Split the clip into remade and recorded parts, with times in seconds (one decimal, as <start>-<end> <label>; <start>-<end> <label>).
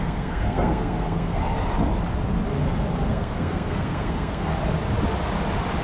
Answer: 0.0-1.4 remade; 1.4-3.1 recorded; 3.1-4.5 remade; 4.5-5.8 recorded